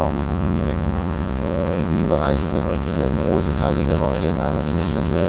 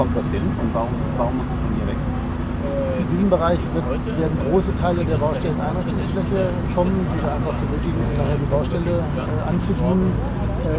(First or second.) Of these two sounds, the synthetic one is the first